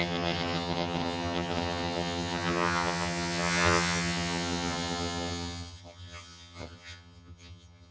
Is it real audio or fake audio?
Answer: fake